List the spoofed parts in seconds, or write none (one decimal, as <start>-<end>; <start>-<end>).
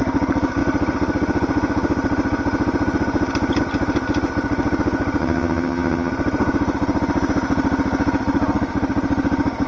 5.2-6.1